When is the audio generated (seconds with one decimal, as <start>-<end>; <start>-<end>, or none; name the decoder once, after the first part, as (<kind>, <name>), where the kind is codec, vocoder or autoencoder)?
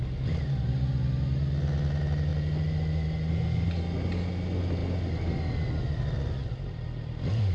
none